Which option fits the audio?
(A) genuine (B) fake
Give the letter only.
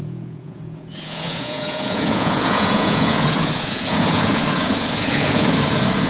B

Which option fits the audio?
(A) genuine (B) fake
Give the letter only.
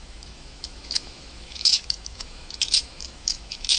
B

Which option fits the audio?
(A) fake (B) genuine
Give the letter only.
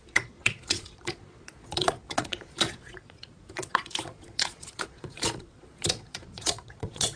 A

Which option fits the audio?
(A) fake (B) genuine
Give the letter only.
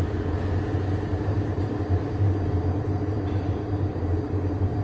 A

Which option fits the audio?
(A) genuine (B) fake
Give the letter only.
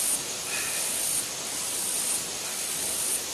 B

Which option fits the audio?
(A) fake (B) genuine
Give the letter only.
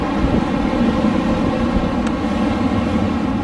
B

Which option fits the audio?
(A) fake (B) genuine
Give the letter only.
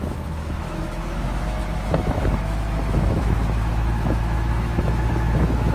A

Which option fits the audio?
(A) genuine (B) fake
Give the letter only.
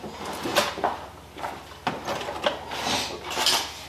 A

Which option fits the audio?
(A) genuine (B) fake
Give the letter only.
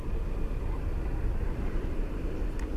A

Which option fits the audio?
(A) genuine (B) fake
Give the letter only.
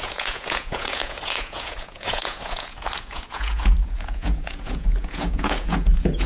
B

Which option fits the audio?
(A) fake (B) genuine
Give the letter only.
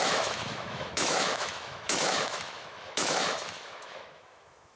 A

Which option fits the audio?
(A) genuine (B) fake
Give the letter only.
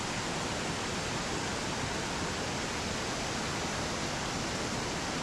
A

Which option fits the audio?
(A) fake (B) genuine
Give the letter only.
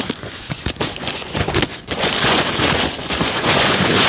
A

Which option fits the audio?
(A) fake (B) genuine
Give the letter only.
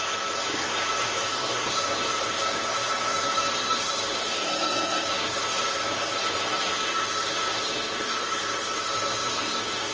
A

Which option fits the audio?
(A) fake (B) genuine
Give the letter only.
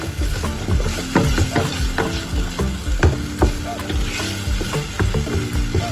B